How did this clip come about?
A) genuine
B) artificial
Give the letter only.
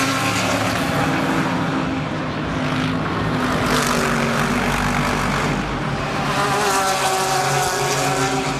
A